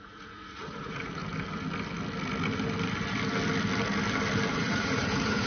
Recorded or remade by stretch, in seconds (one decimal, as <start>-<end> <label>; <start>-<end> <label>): 0.0-1.2 remade; 1.2-4.5 recorded; 4.5-5.5 remade